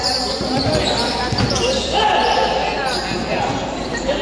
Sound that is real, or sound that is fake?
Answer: fake